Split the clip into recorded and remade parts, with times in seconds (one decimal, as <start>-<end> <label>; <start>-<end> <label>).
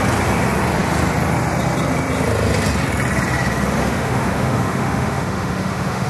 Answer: 0.0-3.8 recorded; 3.8-6.1 remade